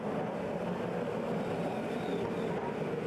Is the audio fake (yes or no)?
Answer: no